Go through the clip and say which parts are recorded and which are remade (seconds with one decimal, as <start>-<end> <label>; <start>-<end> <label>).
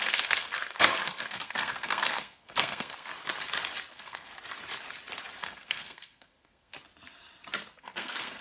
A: 0.0-3.1 remade; 3.1-3.9 recorded; 3.9-4.3 remade; 4.3-5.4 recorded; 5.4-6.7 remade; 6.7-7.8 recorded; 7.8-8.4 remade